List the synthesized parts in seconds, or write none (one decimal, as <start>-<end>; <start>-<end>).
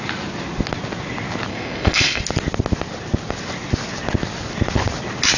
1.5-2.2